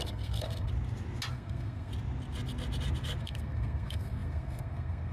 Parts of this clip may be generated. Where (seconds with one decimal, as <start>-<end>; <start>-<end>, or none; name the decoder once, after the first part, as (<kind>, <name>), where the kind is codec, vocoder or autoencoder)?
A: 0.0-0.7 (codec, SNAC); 1.3-1.9; 3.2-5.1